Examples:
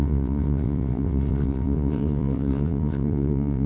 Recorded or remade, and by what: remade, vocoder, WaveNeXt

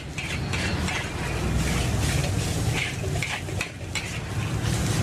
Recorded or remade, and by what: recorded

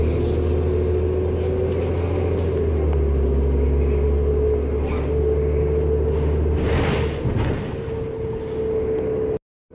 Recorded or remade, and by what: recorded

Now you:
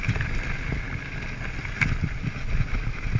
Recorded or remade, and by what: recorded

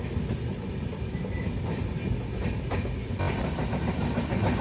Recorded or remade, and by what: recorded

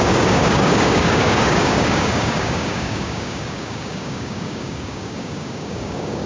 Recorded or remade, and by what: remade, codec, DAC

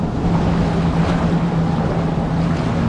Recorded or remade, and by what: recorded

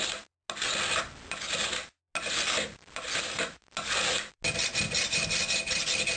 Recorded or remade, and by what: recorded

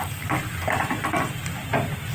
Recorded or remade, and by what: remade, vocoder, BigVGAN v2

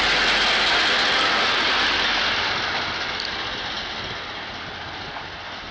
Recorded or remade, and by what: recorded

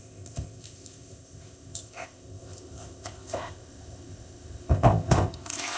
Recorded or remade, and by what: remade, codec, ZipCodec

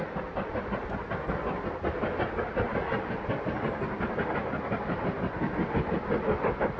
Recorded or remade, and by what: recorded